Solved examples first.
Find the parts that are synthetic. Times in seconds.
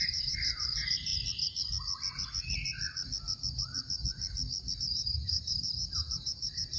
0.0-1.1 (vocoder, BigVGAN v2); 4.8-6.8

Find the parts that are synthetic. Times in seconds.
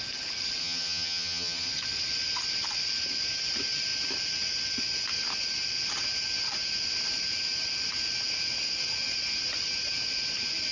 0.6-1.7 (vocoder, HiFi-GAN)